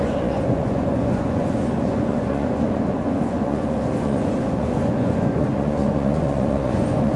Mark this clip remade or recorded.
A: remade